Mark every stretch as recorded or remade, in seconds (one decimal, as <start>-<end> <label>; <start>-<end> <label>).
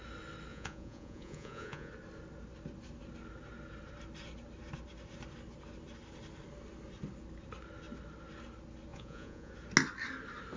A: 0.0-0.5 recorded; 0.5-1.9 remade; 1.9-8.9 recorded; 8.9-9.5 remade; 9.5-10.6 recorded